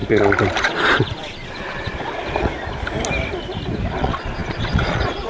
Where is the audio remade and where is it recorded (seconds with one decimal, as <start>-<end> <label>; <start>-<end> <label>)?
0.0-0.6 recorded; 0.6-2.5 remade; 2.5-4.0 recorded; 4.0-5.3 remade